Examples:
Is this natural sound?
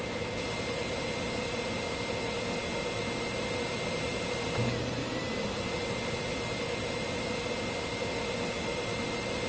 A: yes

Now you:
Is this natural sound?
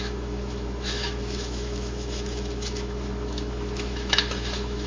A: no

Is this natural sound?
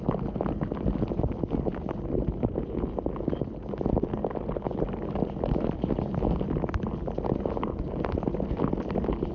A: yes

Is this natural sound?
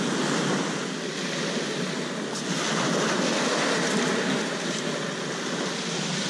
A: yes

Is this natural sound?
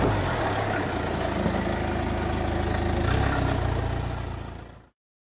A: yes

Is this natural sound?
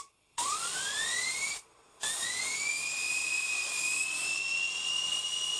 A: no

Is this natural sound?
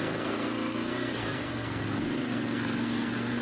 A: no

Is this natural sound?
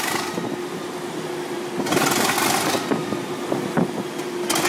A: yes